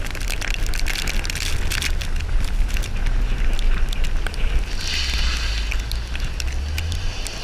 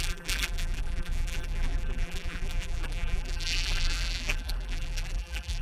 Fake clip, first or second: second